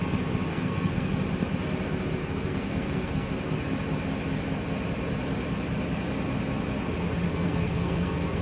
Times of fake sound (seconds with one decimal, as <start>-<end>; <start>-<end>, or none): 0.5-1.1; 2.2-3.3; 7.3-8.4